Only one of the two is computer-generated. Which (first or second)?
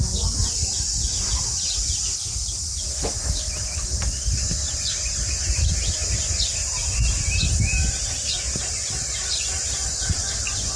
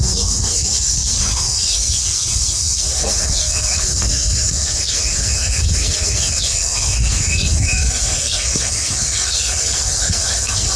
second